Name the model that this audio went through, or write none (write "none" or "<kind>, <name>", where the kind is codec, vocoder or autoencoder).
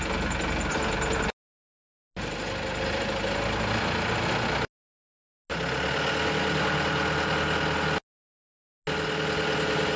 none